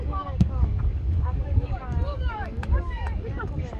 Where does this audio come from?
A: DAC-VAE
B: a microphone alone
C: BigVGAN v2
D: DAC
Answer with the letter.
D